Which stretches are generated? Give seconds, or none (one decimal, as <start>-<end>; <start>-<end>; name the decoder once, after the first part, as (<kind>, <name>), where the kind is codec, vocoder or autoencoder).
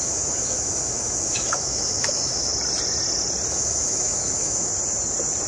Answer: 0.0-2.5 (autoencoder, DAC-VAE); 3.5-4.7